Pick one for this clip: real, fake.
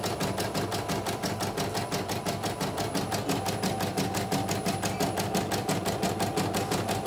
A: real